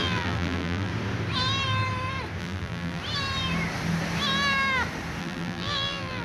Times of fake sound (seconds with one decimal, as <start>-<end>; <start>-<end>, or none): 0.0-0.9; 2.4-3.0; 5.2-6.2